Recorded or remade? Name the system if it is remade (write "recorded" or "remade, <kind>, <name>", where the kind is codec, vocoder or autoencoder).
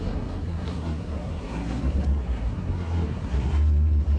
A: remade, codec, SNAC